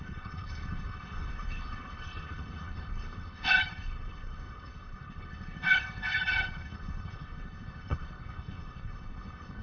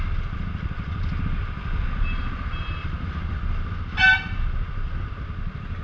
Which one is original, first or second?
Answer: second